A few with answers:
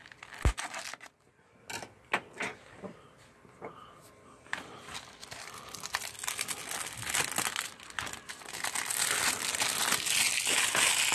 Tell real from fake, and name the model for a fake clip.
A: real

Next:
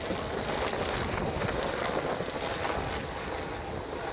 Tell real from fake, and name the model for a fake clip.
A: real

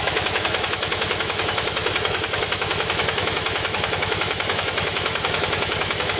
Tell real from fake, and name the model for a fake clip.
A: fake, autoencoder, DAC-VAE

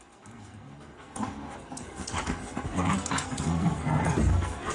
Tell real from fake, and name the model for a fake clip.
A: fake, codec, SNAC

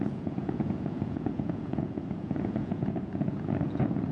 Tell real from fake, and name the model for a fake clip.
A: fake, vocoder, Vocos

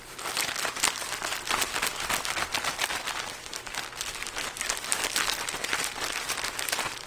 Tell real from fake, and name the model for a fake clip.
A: real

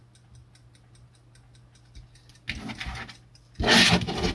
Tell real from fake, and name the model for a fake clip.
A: real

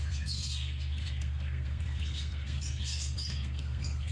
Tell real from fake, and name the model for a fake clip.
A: fake, codec, SNAC